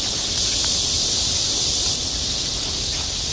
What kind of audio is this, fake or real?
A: real